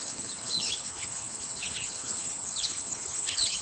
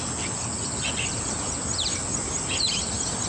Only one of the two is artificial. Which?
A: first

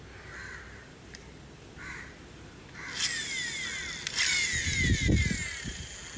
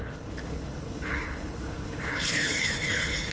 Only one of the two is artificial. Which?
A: second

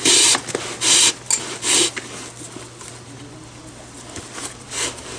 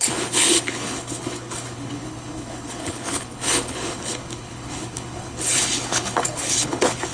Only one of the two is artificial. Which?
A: second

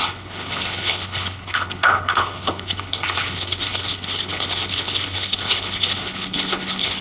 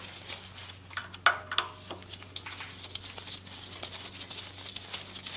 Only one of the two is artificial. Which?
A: first